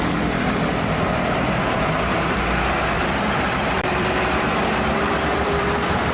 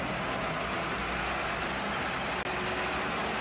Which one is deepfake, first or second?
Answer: first